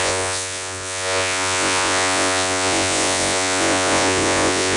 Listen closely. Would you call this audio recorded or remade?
remade